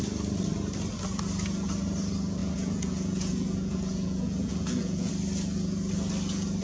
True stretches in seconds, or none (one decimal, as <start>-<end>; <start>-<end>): 0.0-2.4; 5.1-6.6